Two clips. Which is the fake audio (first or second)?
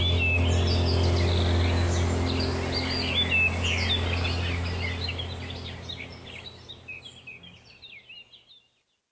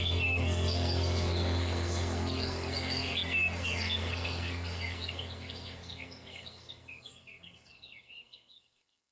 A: second